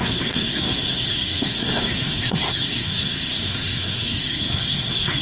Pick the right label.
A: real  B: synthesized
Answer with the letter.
B